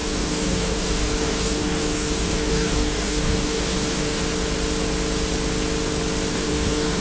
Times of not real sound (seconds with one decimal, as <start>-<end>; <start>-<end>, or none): 0.0-4.2; 6.3-7.0